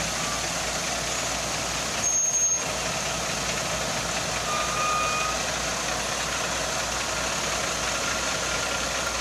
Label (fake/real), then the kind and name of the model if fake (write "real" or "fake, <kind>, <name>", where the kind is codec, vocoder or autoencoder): real